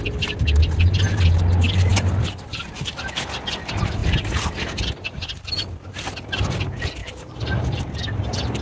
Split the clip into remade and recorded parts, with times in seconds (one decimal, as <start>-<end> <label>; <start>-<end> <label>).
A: 0.0-1.9 recorded; 1.9-2.9 remade; 2.9-4.0 recorded; 4.0-5.5 remade; 5.5-7.0 recorded; 7.0-8.6 remade